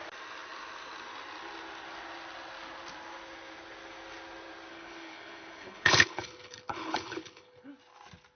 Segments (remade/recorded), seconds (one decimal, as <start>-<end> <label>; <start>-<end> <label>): 0.0-4.7 recorded; 4.7-7.7 remade; 7.7-8.4 recorded